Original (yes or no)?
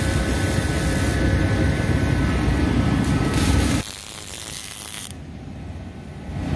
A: yes